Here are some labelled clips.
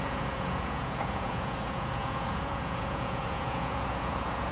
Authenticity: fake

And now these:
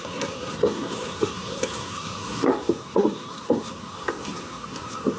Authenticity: fake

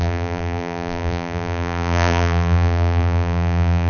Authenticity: fake